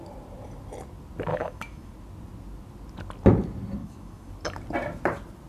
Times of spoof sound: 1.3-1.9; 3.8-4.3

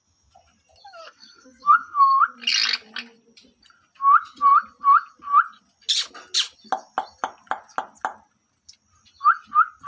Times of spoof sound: 1.0-2.2